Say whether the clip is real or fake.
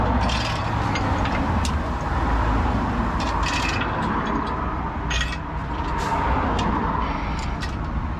real